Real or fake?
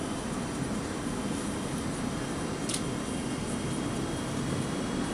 real